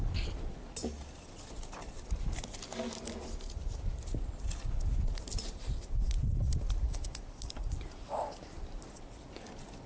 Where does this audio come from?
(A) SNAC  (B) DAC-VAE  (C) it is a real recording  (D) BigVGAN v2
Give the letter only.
C